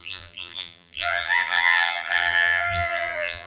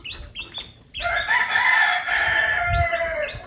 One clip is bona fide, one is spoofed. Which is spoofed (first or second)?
first